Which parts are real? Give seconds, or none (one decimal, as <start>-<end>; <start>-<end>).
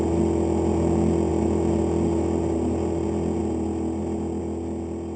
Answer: 0.0-5.2